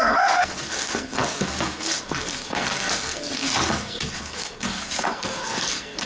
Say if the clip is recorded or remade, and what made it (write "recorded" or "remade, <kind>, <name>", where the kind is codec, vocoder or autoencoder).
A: remade, codec, SNAC